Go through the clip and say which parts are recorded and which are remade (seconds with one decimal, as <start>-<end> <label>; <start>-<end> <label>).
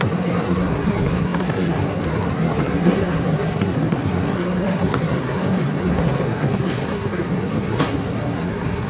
0.0-8.9 remade